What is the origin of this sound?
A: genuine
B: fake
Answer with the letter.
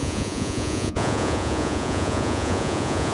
B